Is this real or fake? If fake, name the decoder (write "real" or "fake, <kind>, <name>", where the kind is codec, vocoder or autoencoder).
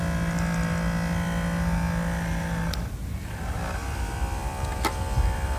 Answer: real